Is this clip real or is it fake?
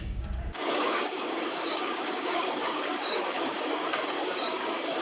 fake